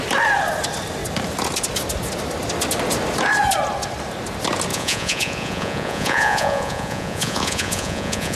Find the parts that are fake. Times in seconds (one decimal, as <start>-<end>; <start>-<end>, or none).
4.7-8.4